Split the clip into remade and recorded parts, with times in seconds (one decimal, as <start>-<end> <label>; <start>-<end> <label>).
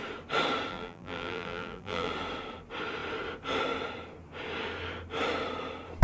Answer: 0.0-0.7 recorded; 0.7-2.1 remade; 2.1-6.0 recorded